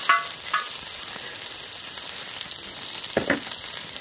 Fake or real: real